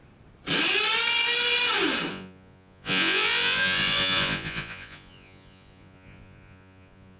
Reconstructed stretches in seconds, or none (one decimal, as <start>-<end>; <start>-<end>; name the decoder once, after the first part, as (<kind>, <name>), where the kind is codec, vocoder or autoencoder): 2.1-7.2 (vocoder, Vocos)